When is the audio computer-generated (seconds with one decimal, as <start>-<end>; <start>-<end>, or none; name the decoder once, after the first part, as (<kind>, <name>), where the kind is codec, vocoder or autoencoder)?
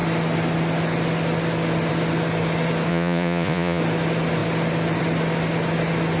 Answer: 2.9-3.8 (vocoder, Vocos)